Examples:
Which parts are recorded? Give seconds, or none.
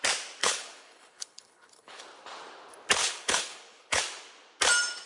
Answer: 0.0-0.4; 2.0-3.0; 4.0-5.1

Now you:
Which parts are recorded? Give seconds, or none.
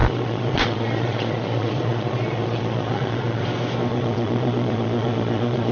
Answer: 3.4-3.9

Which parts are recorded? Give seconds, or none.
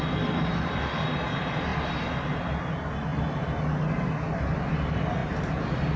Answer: 0.0-5.2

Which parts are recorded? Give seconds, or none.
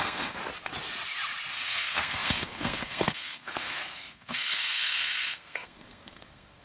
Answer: 0.4-1.5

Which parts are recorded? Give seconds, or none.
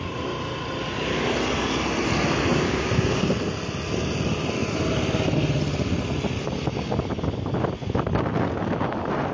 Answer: 0.0-2.5; 3.3-9.3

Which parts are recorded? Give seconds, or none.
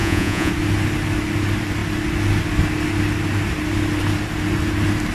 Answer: 0.5-5.1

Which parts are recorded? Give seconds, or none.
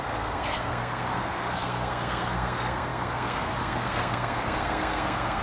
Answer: none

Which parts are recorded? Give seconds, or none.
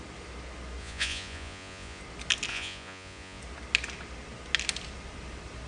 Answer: 0.0-0.8; 2.0-2.5; 3.4-5.7